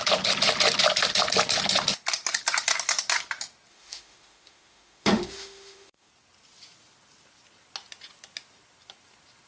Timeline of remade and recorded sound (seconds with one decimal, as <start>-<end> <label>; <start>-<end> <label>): 0.0-3.7 recorded; 3.7-6.1 remade; 6.1-9.5 recorded